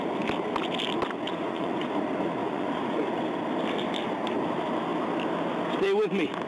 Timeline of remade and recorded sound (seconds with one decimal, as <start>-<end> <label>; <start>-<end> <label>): 0.0-1.3 recorded; 1.3-1.9 remade; 1.9-2.4 recorded; 2.4-3.1 remade; 3.1-6.5 recorded